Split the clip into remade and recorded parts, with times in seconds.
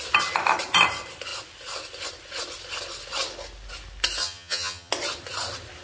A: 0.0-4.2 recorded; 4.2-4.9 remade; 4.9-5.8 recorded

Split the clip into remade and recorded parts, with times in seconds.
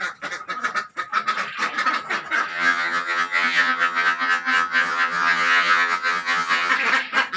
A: 0.0-2.5 recorded; 2.5-6.7 remade; 6.7-7.4 recorded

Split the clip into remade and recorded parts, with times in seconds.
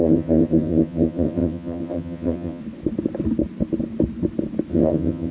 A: 0.0-2.6 remade; 2.6-4.7 recorded; 4.7-5.3 remade